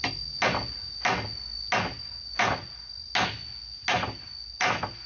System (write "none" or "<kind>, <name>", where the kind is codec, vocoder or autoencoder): none